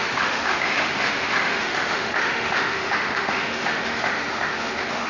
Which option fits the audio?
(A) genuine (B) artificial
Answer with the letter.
B